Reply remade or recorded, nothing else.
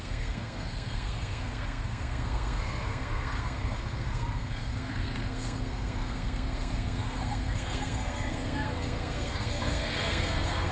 remade